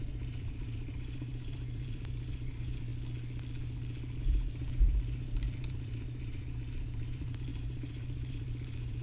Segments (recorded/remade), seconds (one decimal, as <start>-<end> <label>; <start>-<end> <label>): 0.0-2.9 remade; 2.9-4.2 recorded; 4.2-9.0 remade